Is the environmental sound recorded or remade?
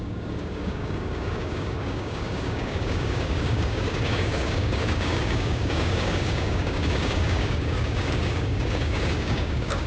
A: remade